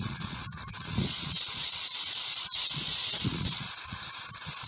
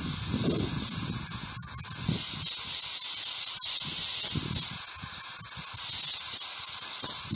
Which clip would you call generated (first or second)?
first